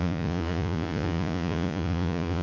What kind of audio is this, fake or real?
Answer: fake